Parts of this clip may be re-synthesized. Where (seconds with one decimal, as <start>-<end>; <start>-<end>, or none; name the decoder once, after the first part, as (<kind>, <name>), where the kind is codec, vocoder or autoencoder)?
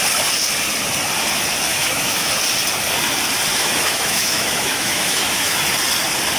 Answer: 1.7-2.3 (autoencoder, DAC-VAE); 3.5-5.6